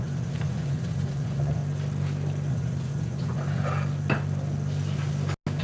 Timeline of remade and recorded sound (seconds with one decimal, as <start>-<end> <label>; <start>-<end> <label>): 0.0-1.6 remade; 1.6-2.5 recorded; 2.5-3.6 remade; 3.6-5.6 recorded